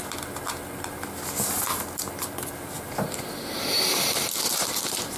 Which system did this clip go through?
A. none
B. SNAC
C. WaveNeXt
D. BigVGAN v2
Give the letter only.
A